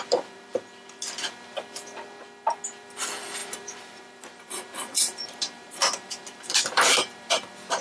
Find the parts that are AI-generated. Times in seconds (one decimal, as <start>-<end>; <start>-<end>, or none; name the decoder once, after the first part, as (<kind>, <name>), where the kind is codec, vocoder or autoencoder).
0.0-0.5 (vocoder, BigVGAN v2); 2.7-7.8